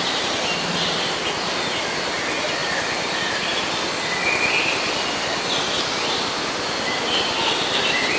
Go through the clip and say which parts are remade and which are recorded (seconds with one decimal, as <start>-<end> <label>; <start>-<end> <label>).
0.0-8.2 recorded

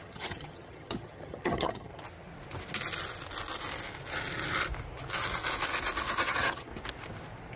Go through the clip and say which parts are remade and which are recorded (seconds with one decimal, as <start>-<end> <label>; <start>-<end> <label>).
0.0-1.9 remade; 1.9-6.2 recorded; 6.2-6.7 remade; 6.7-7.6 recorded

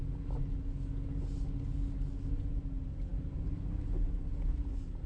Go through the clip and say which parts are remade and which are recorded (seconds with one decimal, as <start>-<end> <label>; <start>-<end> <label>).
0.0-5.1 recorded

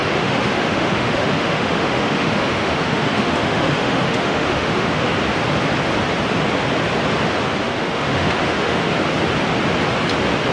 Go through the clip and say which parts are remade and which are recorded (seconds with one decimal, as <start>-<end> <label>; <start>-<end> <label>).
0.0-5.1 remade; 5.1-7.6 recorded; 7.6-8.9 remade; 8.9-10.5 recorded

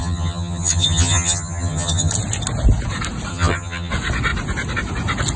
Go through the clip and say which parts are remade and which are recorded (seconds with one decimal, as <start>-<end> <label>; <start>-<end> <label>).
0.0-2.1 remade; 2.1-3.3 recorded; 3.3-3.9 remade; 3.9-5.4 recorded